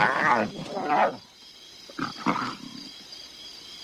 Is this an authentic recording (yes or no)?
no